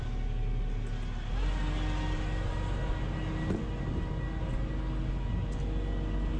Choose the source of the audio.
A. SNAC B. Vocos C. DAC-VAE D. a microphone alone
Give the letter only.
D